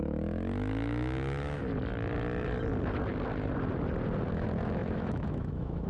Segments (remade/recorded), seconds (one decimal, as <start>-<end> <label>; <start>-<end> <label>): 0.0-1.6 remade; 1.6-4.3 recorded; 4.3-5.9 remade